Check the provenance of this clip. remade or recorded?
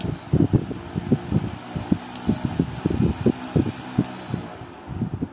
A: recorded